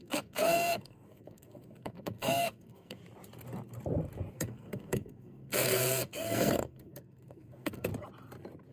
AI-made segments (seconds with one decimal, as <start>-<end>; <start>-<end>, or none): 0.0-3.0; 4.3-7.9